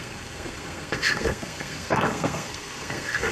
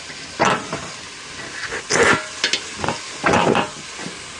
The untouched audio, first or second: second